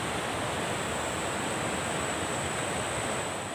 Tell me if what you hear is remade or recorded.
recorded